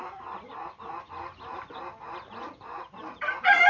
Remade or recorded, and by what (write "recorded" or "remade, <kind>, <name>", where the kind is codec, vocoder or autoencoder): recorded